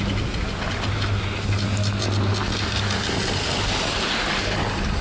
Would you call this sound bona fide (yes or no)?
yes